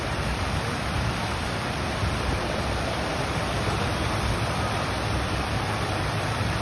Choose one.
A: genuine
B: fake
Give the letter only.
B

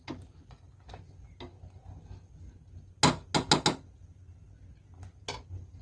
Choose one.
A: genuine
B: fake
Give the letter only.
A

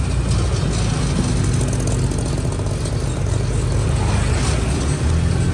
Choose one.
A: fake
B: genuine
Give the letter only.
B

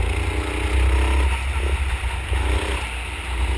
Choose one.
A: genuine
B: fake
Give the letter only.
A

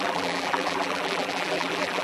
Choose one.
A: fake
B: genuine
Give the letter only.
A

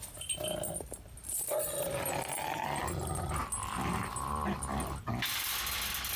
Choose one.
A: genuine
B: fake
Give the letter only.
A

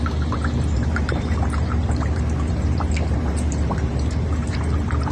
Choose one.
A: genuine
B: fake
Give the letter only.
B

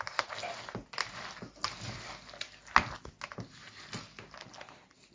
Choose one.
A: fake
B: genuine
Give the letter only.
B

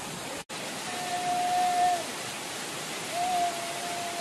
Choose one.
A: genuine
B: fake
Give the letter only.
A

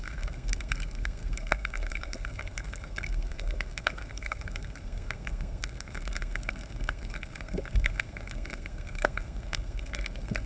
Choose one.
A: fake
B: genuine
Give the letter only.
A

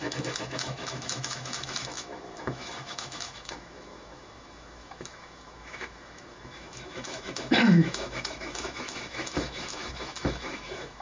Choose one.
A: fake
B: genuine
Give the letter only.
A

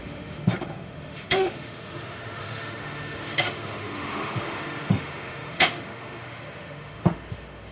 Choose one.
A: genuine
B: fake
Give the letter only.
B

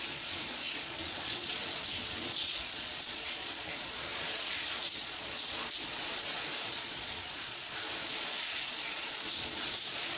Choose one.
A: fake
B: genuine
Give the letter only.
A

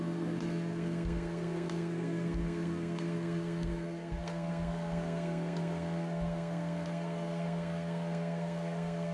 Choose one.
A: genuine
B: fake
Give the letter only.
B